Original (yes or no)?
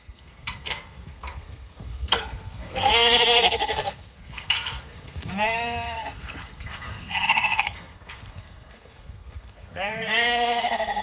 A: no